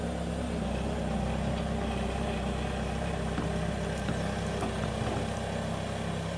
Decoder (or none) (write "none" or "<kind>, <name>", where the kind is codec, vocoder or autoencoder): none